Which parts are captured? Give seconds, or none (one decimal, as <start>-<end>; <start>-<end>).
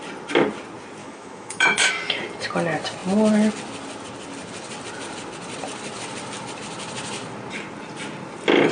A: 0.0-1.0; 1.9-8.7